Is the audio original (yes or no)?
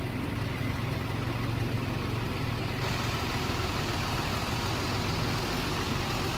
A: yes